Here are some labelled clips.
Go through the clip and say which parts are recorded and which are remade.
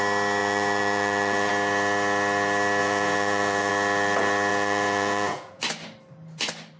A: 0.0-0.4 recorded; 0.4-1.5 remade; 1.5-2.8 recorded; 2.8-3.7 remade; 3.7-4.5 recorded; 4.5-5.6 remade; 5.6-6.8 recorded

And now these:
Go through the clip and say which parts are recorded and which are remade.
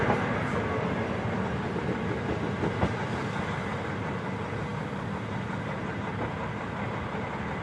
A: 0.0-7.6 recorded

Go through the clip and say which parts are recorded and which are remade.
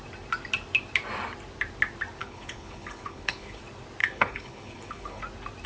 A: 0.0-2.2 recorded; 2.2-3.6 remade; 3.6-4.0 recorded; 4.0-5.2 remade; 5.2-5.7 recorded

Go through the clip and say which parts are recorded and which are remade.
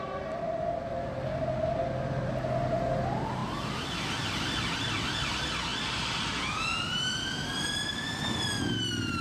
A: 0.0-9.2 recorded